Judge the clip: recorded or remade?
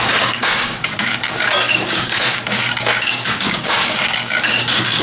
remade